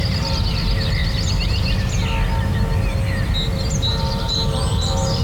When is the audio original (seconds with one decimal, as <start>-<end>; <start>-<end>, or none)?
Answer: 1.0-4.1